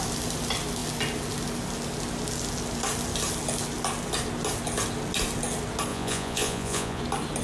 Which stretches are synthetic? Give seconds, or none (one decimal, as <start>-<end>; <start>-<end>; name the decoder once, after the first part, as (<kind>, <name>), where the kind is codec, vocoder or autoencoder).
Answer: 5.9-7.0 (vocoder, Vocos)